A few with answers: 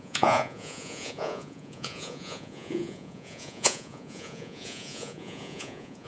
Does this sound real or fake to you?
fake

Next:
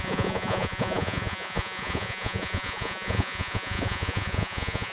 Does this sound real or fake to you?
fake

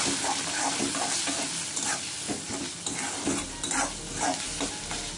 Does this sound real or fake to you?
real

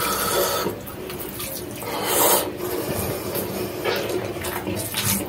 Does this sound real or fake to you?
real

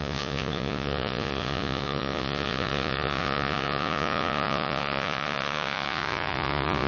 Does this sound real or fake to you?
fake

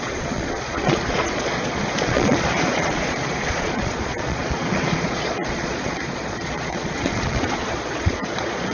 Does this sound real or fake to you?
fake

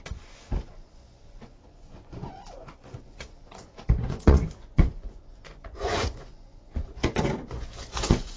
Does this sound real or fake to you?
fake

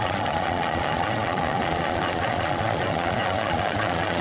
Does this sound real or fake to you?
fake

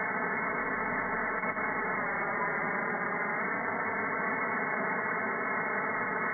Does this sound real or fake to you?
real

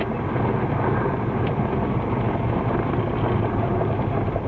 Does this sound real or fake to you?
real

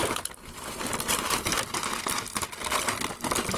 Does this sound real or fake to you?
real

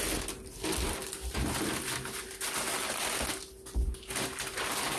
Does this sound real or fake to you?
real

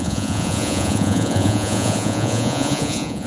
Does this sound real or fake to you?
fake